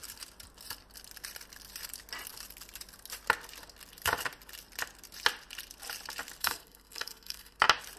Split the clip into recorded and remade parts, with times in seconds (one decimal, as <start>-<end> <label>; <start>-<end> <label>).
0.0-6.4 recorded; 6.4-7.6 remade; 7.6-8.0 recorded